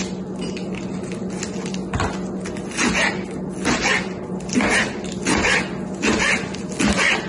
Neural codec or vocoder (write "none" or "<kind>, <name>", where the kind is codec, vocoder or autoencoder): none